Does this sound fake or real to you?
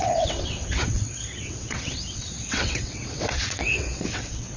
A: fake